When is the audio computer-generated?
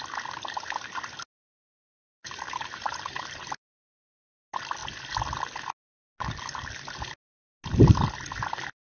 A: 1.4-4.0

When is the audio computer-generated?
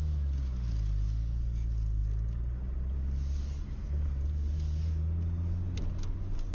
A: none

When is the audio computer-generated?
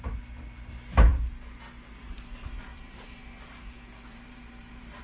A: 2.7-3.6; 4.1-5.0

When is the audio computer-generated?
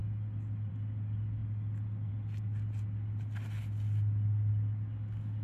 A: none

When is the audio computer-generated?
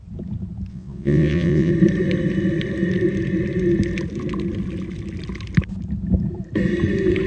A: 0.7-1.7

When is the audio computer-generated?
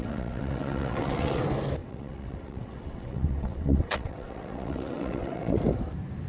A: 0.0-1.4; 1.8-5.6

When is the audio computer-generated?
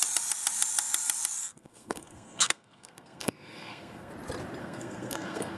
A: 1.5-4.1; 4.6-5.6